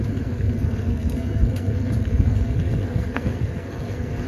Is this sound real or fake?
fake